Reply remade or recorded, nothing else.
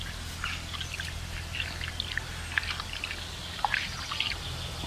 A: recorded